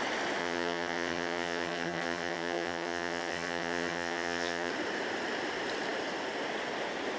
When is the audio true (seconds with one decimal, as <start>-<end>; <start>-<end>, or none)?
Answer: 0.0-0.4; 4.7-7.2